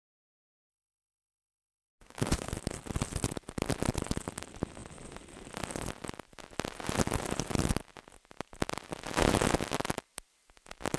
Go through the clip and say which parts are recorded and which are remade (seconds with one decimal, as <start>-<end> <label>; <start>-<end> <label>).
0.0-0.7 recorded; 0.7-2.5 remade; 2.5-11.0 recorded